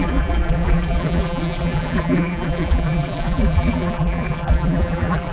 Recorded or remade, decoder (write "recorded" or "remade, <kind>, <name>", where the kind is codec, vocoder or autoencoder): remade, vocoder, BigVGAN v2